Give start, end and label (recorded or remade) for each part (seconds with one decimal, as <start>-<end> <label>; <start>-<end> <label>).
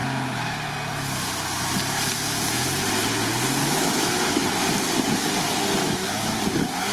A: 0.0-0.7 remade; 0.7-3.6 recorded; 3.6-4.7 remade; 4.7-5.8 recorded; 5.8-6.4 remade; 6.4-6.9 recorded